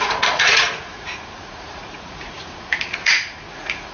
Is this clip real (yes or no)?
no